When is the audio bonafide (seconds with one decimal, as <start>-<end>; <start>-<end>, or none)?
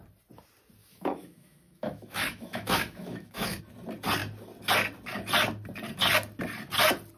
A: 0.0-0.8; 3.6-7.2